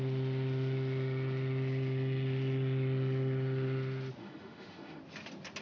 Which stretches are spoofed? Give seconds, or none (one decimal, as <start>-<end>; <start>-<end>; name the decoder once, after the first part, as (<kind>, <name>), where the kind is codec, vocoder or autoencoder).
4.2-5.0 (autoencoder, DAC-VAE)